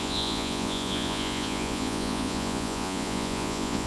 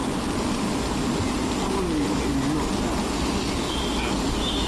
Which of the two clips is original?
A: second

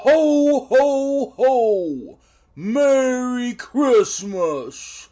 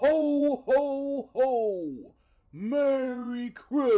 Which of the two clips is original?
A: first